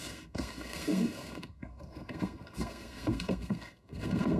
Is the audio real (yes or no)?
no